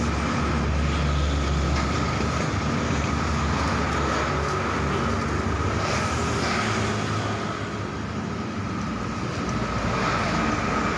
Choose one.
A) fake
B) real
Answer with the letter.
B